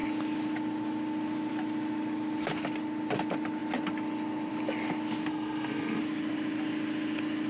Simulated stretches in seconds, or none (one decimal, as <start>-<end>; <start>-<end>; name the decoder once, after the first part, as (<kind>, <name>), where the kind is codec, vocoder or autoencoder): 5.3-6.0 (codec, SNAC)